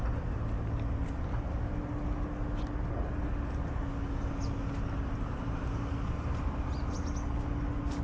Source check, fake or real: real